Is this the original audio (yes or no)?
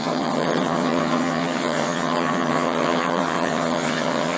no